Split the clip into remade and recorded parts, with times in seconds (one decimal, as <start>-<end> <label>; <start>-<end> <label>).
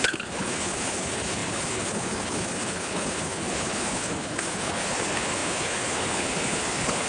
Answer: 0.0-7.1 remade